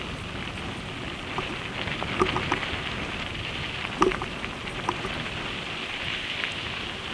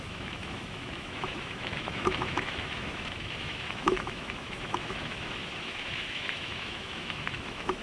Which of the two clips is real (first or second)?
first